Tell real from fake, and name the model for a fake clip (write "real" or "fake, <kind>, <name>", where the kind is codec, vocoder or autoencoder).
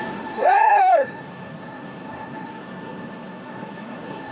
fake, codec, SNAC